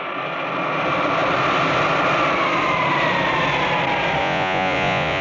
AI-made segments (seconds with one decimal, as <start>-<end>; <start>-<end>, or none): 4.2-5.2